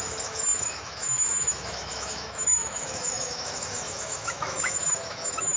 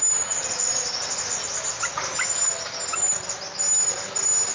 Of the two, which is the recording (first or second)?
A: second